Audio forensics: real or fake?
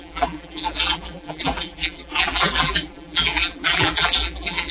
fake